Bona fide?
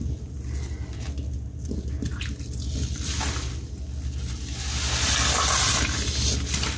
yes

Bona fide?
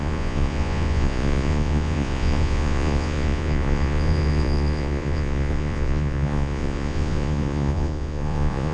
no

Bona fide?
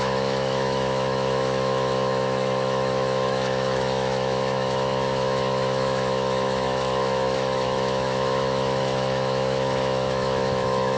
no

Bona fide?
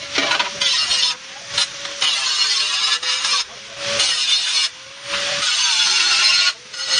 yes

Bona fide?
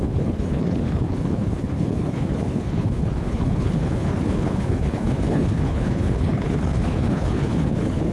no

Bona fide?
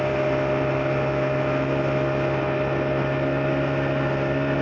yes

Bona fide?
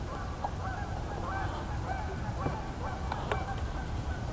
yes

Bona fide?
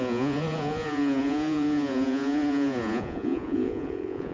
no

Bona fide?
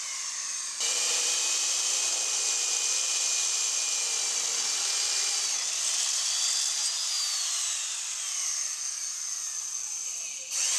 yes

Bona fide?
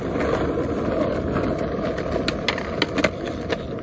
yes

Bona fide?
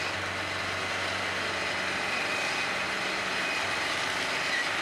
yes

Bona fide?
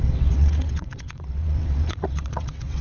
no